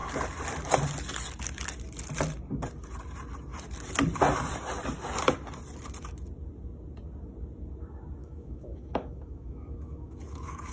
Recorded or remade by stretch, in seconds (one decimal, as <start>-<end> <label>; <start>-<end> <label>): 0.0-8.2 recorded; 8.2-10.7 remade